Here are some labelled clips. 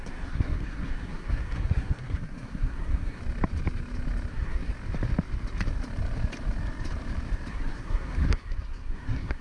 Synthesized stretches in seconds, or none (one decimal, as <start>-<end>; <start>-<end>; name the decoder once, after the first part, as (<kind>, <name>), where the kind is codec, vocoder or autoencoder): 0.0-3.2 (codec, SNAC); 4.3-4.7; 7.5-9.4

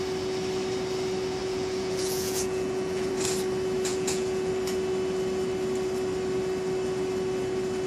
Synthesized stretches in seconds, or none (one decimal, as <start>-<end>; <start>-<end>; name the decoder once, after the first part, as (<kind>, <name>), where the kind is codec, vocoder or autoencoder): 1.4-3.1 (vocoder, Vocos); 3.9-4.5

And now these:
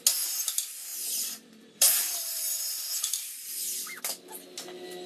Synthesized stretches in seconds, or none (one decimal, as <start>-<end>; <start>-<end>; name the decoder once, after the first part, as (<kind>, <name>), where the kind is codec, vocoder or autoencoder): 0.9-4.0 (vocoder, BigVGAN v2)